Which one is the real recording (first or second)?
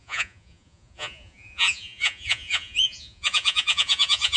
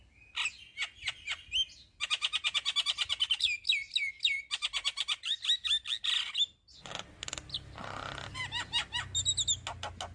second